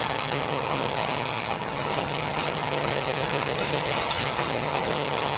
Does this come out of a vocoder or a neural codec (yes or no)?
yes